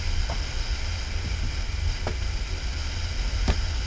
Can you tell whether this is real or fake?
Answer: real